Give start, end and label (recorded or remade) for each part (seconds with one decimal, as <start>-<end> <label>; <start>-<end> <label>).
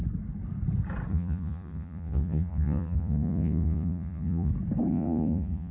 0.0-1.1 recorded; 1.1-4.5 remade; 4.5-4.9 recorded; 4.9-5.7 remade